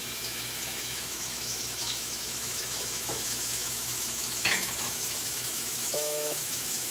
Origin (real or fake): fake